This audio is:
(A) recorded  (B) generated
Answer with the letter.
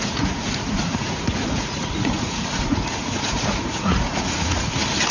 B